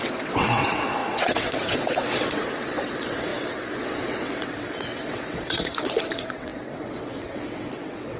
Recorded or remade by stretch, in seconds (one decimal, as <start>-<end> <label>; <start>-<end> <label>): 0.0-8.2 remade